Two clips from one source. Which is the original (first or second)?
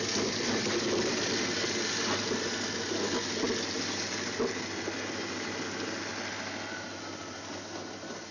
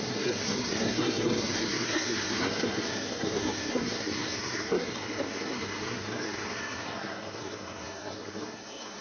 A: first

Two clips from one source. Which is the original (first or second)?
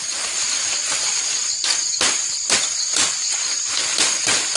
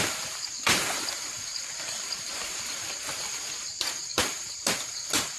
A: first